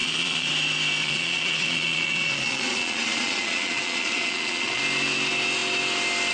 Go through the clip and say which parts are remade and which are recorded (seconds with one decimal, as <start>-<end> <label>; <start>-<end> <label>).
0.0-0.5 remade; 0.5-1.0 recorded; 1.0-4.8 remade; 4.8-6.3 recorded